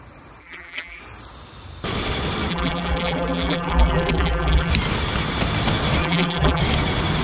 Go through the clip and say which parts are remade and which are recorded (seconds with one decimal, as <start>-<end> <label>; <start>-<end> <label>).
0.0-0.4 recorded; 0.4-1.0 remade; 1.0-2.5 recorded; 2.5-4.7 remade; 4.7-6.0 recorded; 6.0-6.6 remade; 6.6-7.2 recorded